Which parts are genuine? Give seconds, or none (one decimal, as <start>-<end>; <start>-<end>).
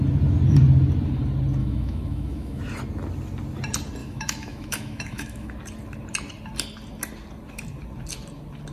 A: 0.0-1.6; 2.6-4.0; 5.5-8.7